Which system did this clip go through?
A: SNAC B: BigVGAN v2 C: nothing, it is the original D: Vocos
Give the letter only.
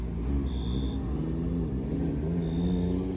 C